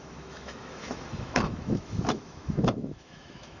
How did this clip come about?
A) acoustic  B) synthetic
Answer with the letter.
B